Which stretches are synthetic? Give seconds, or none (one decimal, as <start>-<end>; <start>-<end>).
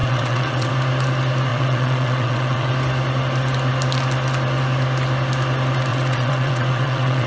0.0-0.7; 1.5-2.7; 5.9-7.3